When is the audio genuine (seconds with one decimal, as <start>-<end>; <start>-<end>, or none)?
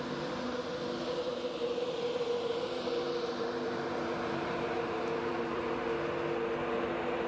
0.0-1.3; 5.7-7.3